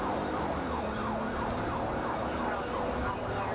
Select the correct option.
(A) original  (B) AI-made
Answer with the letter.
A